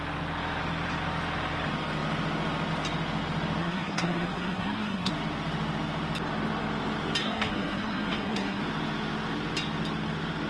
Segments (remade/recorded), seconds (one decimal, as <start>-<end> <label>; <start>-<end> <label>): 0.0-3.6 recorded; 3.6-5.1 remade; 5.1-7.2 recorded; 7.2-8.6 remade; 8.6-10.5 recorded